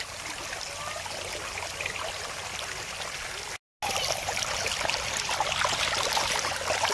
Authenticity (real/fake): real